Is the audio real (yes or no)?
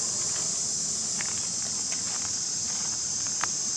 yes